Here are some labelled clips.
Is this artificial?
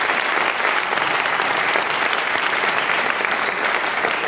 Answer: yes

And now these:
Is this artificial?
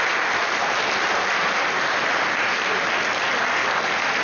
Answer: no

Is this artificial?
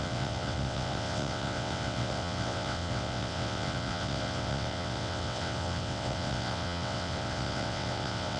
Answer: yes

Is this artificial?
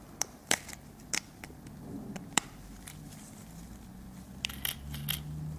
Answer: no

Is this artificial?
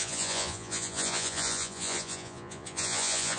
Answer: yes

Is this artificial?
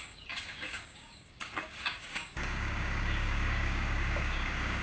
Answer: yes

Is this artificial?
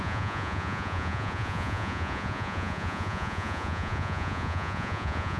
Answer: yes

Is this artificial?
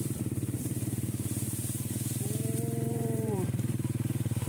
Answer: yes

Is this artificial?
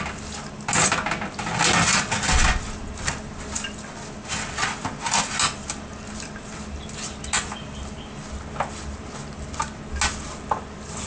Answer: no